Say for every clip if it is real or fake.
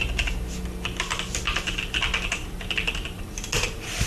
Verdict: real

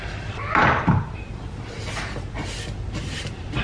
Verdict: real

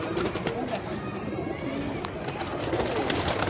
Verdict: real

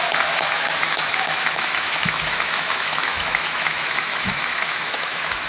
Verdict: fake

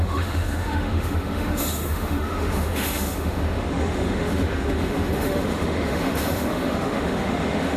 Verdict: fake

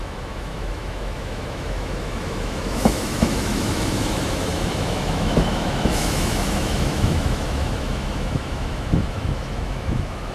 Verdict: fake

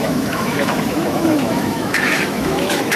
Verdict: fake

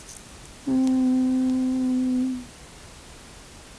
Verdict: real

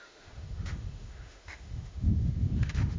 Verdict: fake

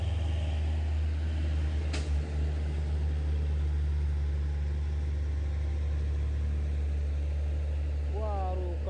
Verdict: real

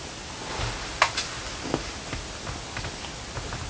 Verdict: real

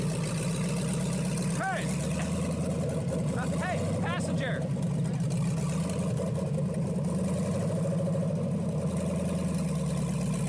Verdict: real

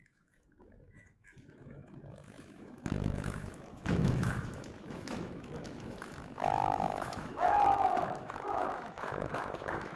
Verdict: fake